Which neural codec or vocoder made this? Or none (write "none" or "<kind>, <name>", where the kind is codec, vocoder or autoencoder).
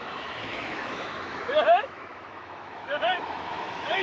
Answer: autoencoder, DAC-VAE